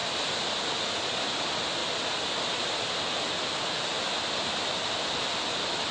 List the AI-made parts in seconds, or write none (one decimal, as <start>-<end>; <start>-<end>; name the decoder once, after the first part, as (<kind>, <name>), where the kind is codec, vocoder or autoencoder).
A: none